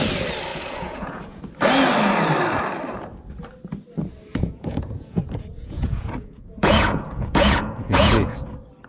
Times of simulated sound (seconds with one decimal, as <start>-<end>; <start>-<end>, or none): 0.5-1.4; 4.3-8.4